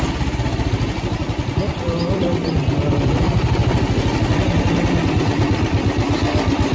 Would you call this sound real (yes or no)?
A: yes